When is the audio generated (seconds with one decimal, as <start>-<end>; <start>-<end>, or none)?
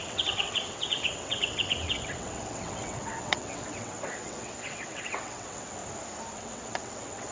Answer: 0.0-5.8; 6.3-7.3